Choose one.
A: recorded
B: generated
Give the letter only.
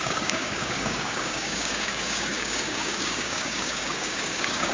B